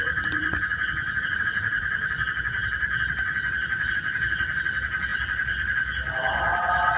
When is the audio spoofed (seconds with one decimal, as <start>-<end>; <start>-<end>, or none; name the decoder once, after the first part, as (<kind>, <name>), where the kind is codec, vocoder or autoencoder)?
0.0-1.9 (vocoder, Vocos)